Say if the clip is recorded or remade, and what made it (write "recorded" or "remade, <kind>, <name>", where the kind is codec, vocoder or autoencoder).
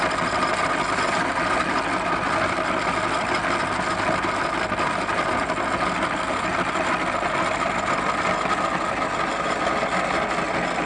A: recorded